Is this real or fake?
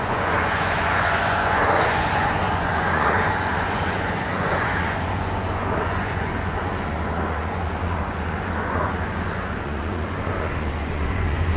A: fake